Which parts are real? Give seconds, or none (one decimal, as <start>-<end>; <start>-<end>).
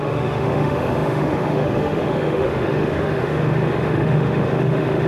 none